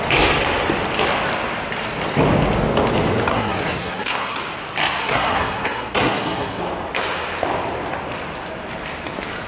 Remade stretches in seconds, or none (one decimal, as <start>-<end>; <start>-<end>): 3.3-4.4; 5.0-6.6